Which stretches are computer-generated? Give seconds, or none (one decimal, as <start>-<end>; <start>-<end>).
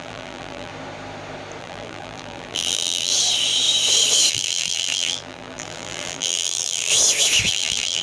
0.0-0.7; 1.6-3.1; 4.3-6.9; 7.5-8.0